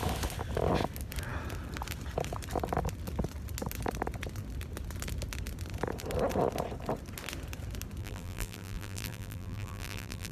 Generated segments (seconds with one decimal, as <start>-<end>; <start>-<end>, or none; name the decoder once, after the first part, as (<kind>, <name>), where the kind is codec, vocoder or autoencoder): 8.0-10.3 (vocoder, BigVGAN v2)